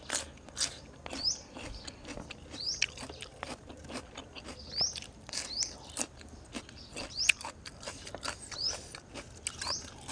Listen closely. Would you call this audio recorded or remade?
recorded